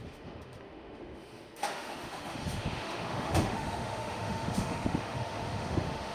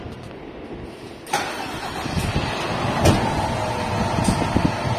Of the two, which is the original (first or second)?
second